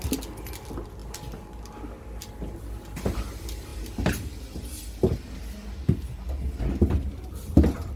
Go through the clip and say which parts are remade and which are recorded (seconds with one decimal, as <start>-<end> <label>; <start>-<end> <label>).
0.0-8.0 recorded